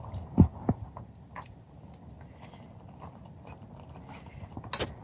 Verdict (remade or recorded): recorded